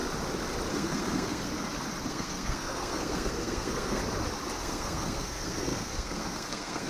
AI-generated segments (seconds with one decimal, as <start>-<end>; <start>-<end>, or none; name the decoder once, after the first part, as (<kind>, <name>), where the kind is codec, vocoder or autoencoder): 0.7-1.5 (codec, SNAC); 2.1-4.0; 4.6-6.9